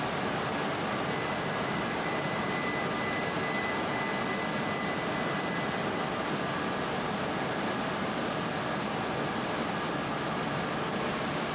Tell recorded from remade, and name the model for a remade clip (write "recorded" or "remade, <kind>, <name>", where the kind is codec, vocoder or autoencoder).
recorded